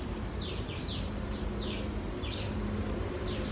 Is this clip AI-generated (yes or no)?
no